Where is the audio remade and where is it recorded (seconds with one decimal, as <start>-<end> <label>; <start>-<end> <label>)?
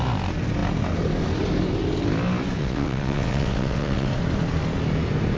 0.0-2.6 recorded; 2.6-4.1 remade; 4.1-5.4 recorded